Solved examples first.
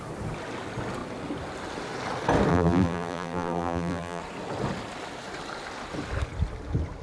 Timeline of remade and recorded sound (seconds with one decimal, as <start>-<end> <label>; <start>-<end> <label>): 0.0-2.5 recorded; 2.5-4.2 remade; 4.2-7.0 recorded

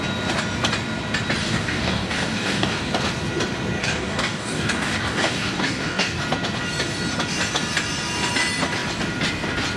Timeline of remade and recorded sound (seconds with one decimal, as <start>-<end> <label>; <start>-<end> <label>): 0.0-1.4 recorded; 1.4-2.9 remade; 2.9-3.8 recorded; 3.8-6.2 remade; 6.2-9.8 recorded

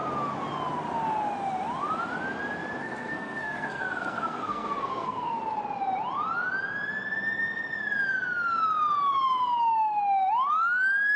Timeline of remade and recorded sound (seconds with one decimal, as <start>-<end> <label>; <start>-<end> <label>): 0.0-2.8 recorded; 2.8-5.4 remade; 5.4-11.2 recorded

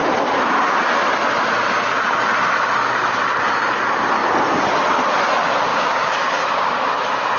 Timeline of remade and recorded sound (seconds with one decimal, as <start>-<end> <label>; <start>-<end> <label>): 0.0-5.7 recorded; 5.7-6.9 remade; 6.9-7.4 recorded